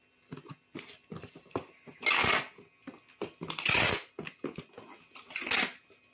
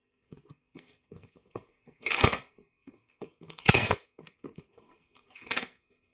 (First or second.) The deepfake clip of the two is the second